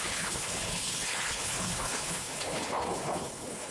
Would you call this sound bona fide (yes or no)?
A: no